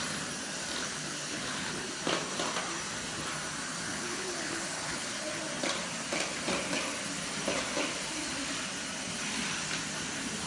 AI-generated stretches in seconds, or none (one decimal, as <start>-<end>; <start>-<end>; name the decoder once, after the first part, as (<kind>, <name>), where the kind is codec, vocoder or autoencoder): 0.8-1.9 (codec, HILCodec); 3.9-5.4

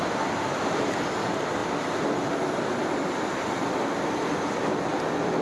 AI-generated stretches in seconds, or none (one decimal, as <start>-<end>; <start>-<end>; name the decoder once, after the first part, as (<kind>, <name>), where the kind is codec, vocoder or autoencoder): none

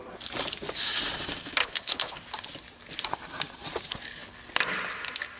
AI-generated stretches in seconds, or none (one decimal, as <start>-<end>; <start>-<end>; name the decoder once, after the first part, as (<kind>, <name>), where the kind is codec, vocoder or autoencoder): 1.6-2.2 (codec, HILCodec)

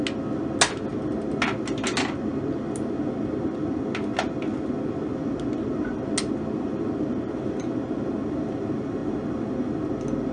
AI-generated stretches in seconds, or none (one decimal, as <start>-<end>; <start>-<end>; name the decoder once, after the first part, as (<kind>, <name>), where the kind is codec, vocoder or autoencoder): none

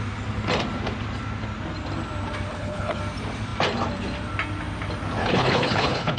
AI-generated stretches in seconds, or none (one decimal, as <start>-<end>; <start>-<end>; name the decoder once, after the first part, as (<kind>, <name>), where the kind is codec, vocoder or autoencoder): 2.5-3.0 (codec, HILCodec); 5.2-6.2